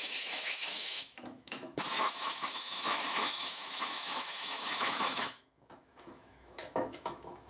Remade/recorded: remade